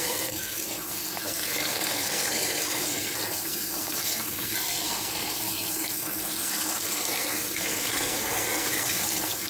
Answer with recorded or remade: remade